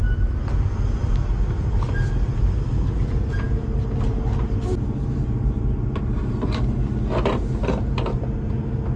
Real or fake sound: real